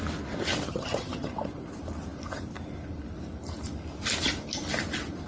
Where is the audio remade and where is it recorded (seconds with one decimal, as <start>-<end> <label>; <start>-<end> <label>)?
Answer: 0.0-0.7 recorded; 0.7-1.3 remade; 1.3-5.3 recorded